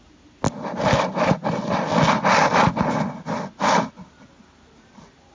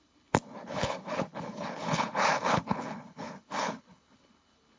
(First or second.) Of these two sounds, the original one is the first